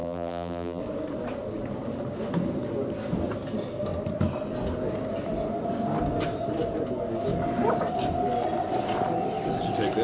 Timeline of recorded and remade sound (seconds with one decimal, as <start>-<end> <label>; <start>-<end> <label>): 0.0-0.8 remade; 0.8-10.0 recorded